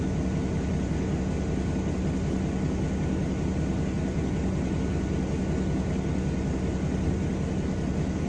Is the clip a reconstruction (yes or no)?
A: no